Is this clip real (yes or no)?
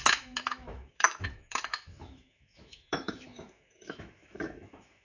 no